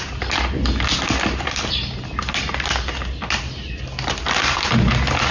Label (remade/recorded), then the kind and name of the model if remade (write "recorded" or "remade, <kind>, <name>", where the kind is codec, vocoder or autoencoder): recorded